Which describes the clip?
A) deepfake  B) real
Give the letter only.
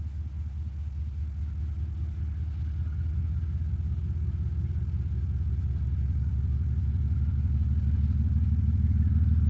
B